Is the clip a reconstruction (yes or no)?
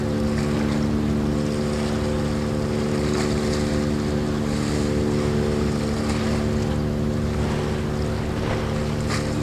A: no